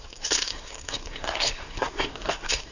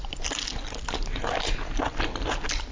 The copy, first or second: first